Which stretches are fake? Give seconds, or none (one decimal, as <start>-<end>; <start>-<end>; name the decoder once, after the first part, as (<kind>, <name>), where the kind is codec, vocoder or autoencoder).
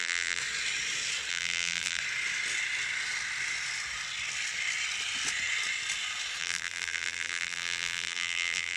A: 0.0-0.4 (vocoder, BigVGAN v2); 1.3-2.0; 6.4-8.8